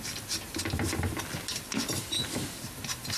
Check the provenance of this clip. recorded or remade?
remade